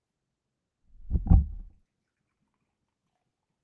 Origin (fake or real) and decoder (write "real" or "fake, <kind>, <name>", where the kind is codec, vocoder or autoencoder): real